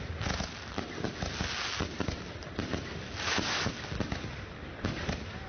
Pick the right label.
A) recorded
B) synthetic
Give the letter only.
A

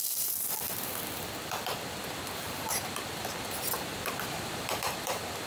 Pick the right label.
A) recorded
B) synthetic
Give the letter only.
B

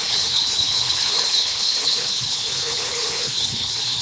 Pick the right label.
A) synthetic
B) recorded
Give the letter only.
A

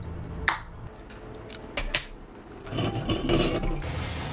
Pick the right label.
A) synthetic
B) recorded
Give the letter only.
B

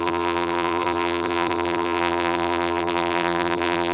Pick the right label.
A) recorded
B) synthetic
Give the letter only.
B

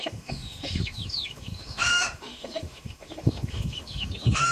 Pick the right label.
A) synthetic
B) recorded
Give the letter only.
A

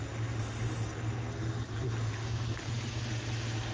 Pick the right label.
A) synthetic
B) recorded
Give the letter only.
B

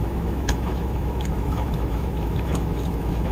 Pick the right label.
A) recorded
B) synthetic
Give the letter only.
B